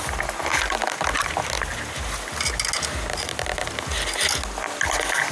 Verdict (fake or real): real